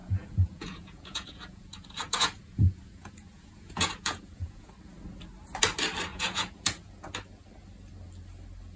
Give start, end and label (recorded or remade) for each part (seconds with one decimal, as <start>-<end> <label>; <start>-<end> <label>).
0.0-4.7 remade; 4.7-6.1 recorded; 6.1-7.1 remade; 7.1-8.8 recorded